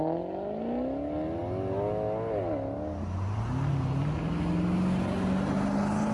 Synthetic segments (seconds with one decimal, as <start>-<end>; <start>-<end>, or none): none